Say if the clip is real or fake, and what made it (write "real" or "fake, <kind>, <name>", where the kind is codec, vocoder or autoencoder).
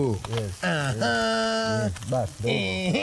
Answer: real